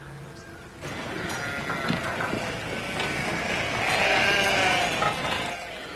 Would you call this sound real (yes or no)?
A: yes